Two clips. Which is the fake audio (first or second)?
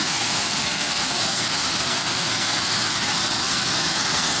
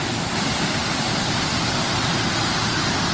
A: first